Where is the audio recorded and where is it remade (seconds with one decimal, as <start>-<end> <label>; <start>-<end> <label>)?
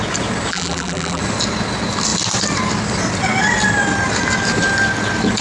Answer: 0.0-0.5 recorded; 0.5-1.2 remade; 1.2-5.4 recorded